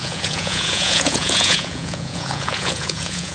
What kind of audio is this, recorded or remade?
remade